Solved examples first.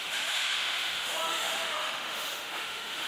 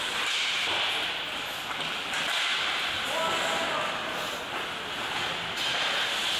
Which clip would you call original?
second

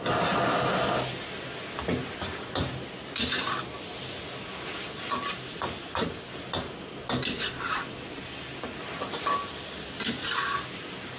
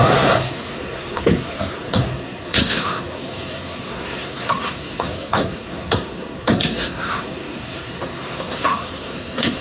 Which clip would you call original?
first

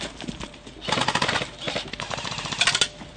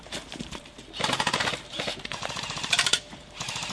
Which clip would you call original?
first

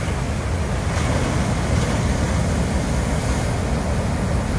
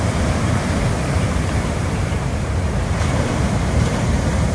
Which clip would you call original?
first